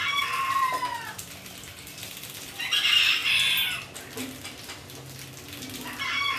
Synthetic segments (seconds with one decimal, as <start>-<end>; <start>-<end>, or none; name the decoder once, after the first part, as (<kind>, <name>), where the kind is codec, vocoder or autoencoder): 0.0-3.2 (vocoder, BigVGAN v2)